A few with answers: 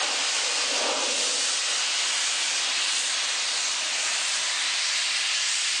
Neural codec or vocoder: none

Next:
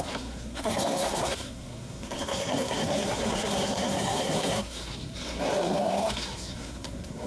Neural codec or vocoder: codec, SNAC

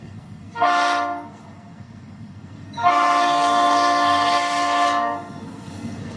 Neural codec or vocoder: codec, SNAC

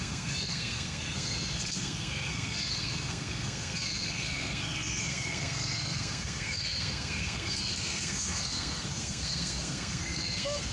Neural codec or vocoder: codec, SNAC